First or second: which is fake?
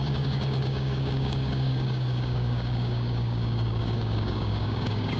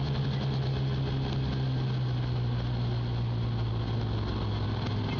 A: first